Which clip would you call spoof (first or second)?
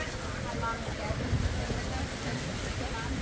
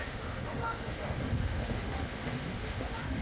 second